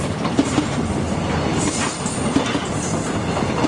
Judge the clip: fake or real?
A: real